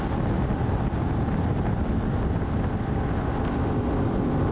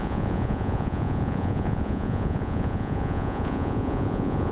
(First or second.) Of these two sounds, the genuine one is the first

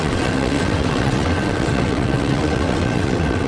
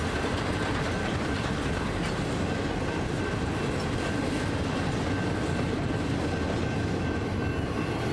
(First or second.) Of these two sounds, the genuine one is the second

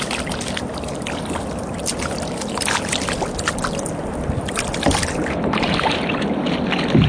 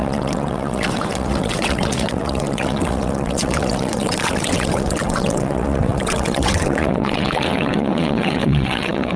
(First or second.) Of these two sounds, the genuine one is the first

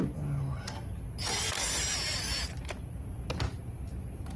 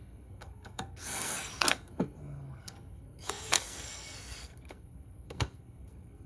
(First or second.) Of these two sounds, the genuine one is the first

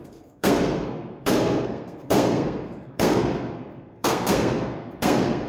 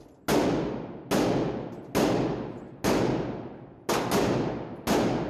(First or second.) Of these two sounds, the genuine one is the second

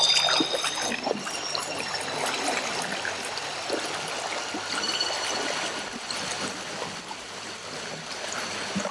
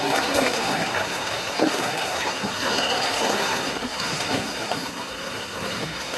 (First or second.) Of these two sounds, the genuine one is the first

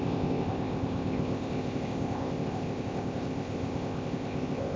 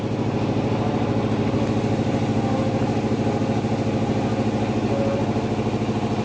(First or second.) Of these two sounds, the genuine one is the second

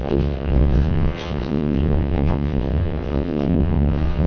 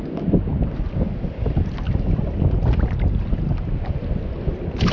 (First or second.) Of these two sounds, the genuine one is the second